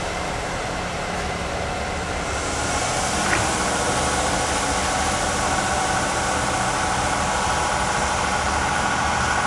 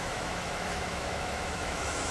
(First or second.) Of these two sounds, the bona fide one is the first